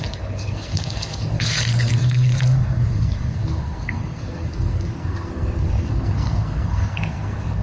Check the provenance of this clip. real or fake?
fake